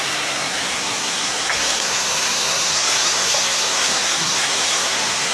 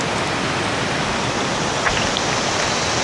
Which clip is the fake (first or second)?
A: first